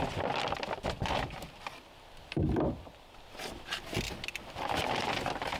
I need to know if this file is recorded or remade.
recorded